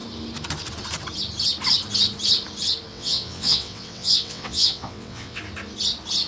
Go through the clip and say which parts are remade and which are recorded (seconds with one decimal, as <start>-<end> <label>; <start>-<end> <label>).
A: 0.0-2.9 recorded; 2.9-5.4 remade; 5.4-6.3 recorded